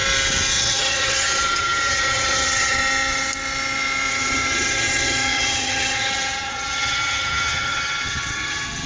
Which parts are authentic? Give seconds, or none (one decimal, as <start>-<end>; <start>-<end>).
0.0-0.5; 2.8-4.1